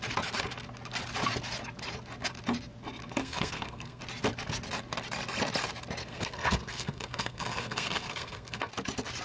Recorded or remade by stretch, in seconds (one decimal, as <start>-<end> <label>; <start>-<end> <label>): 0.0-3.2 recorded; 3.2-4.0 remade; 4.0-6.0 recorded; 6.0-8.7 remade; 8.7-9.2 recorded